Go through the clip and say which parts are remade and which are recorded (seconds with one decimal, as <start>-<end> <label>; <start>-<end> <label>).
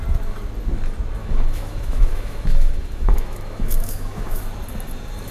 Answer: 0.0-1.2 recorded; 1.2-4.4 remade; 4.4-5.3 recorded